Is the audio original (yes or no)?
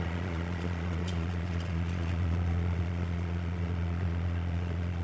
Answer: no